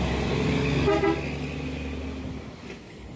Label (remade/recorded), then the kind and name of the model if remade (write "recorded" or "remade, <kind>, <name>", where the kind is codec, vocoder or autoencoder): recorded